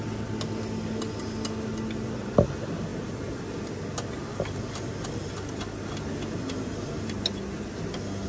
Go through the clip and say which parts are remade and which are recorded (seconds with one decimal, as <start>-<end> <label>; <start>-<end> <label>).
0.0-8.3 recorded

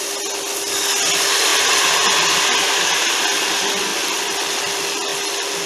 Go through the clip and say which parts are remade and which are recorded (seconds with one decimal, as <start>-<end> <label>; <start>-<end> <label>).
0.0-3.9 recorded; 3.9-4.5 remade; 4.5-5.1 recorded; 5.1-5.7 remade

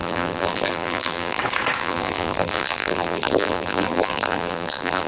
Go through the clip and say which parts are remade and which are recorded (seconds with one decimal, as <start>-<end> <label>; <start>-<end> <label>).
0.0-1.4 remade; 1.4-1.8 recorded; 1.8-5.1 remade

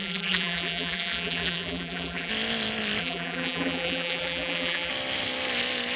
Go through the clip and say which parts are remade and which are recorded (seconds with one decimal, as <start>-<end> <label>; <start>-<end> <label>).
0.0-2.3 remade; 2.3-3.0 recorded; 3.0-4.9 remade; 4.9-6.0 recorded

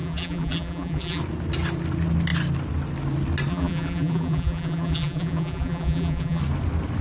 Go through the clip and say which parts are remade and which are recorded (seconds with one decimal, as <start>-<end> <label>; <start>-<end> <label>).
0.0-1.2 remade; 1.2-3.5 recorded; 3.5-6.4 remade; 6.4-7.0 recorded

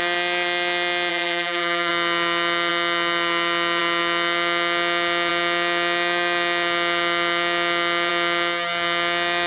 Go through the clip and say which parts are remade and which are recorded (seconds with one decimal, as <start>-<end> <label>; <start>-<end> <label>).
0.0-1.1 recorded; 1.1-1.9 remade; 1.9-9.5 recorded

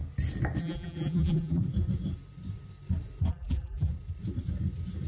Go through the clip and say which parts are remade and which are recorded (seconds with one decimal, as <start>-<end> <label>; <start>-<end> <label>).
0.0-0.6 recorded; 0.6-1.6 remade; 1.6-3.3 recorded; 3.3-3.9 remade; 3.9-5.1 recorded